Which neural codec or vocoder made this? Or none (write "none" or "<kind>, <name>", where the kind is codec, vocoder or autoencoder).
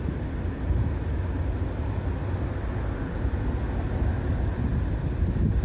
none